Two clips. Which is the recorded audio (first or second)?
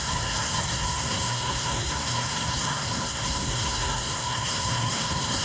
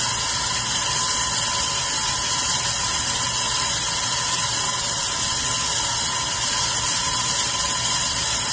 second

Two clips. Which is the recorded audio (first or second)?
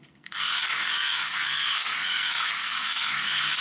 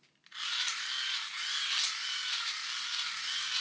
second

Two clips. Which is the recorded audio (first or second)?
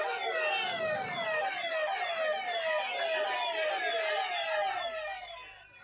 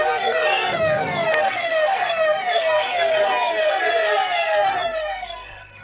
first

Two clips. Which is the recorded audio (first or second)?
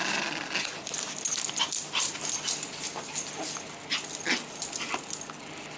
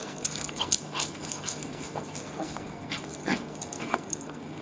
first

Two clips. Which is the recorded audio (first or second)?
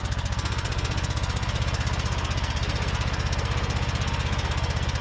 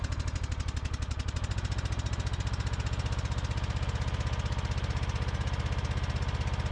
second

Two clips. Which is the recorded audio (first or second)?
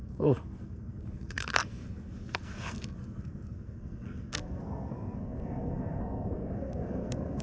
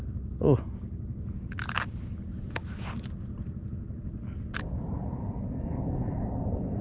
second